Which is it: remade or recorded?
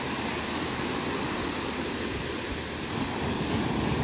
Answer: remade